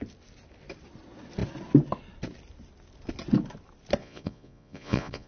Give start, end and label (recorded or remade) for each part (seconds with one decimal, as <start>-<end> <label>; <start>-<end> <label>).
0.0-4.0 recorded; 4.0-5.3 remade